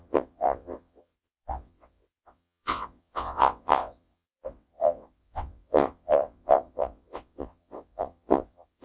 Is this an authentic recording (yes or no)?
no